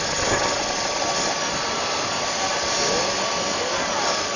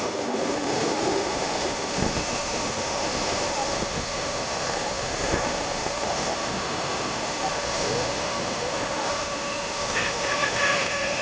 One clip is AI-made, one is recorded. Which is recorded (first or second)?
first